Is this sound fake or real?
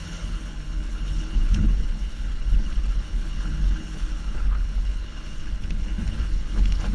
fake